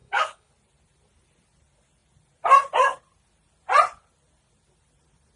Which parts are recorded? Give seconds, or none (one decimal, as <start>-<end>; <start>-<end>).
0.5-5.4